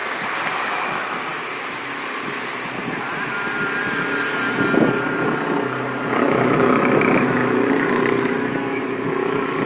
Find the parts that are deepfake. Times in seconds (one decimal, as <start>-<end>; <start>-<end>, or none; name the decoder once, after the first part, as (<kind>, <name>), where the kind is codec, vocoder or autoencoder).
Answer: 0.6-1.3 (autoencoder, DAC-VAE); 6.2-9.7